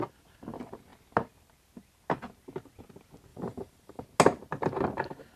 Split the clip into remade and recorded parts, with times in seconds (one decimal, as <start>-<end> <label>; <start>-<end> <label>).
0.0-3.3 recorded; 3.3-4.0 remade; 4.0-5.4 recorded